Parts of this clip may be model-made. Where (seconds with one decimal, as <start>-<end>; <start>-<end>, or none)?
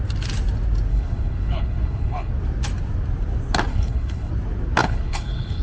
0.9-2.3; 3.7-4.3; 4.8-5.6